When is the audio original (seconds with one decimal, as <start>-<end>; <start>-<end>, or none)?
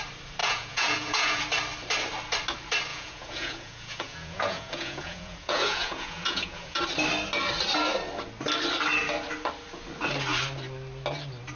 0.0-0.4; 1.4-2.9; 6.8-11.6